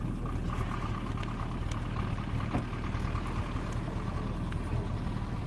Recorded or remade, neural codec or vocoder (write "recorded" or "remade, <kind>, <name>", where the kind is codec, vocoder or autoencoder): recorded